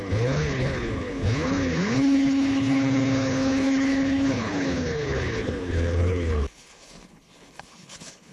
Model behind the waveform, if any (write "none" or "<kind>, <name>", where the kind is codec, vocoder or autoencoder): codec, HILCodec